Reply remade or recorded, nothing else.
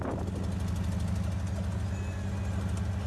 recorded